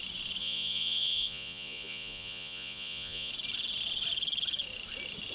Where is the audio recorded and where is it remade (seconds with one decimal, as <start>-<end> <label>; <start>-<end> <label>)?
0.0-0.4 recorded; 0.4-3.3 remade; 3.3-5.3 recorded